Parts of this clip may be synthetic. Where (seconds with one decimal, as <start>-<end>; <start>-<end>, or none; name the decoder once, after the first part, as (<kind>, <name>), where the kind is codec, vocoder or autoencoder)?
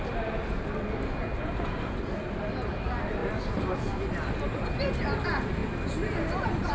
none